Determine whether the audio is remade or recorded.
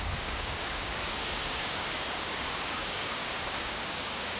remade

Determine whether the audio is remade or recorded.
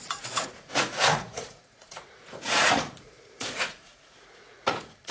remade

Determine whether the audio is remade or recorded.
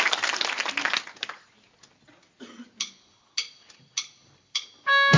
recorded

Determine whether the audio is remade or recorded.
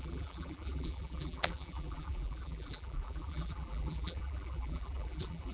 remade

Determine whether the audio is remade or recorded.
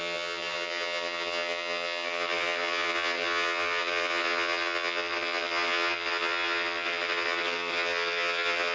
remade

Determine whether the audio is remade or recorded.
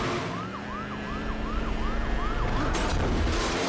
recorded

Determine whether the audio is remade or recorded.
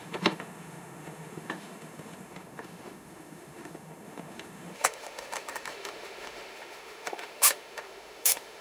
remade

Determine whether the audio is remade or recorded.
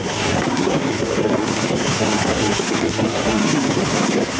remade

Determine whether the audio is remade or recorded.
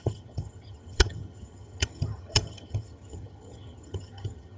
remade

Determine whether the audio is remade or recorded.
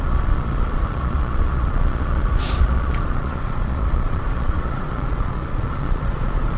remade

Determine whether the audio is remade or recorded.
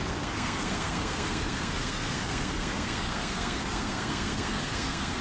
remade